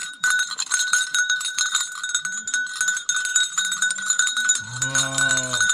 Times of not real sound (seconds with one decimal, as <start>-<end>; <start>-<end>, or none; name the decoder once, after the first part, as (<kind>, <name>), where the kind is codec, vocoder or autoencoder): 0.0-1.6 (vocoder, BigVGAN v2); 3.3-5.3